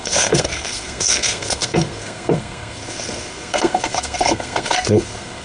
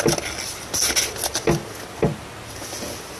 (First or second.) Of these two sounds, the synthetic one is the first